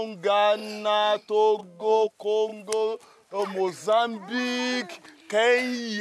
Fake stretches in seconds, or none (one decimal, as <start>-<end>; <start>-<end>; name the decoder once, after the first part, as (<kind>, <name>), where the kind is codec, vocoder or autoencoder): 1.6-2.1 (codec, SNAC)